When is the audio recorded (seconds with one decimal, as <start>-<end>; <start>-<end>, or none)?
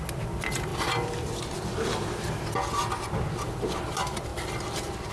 0.0-0.7; 2.4-5.1